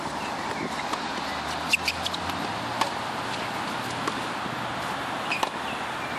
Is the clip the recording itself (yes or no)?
yes